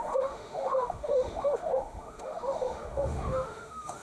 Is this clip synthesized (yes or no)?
yes